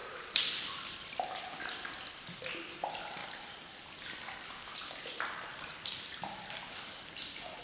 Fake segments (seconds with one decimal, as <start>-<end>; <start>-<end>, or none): 0.0-1.4; 3.2-3.9; 4.7-6.6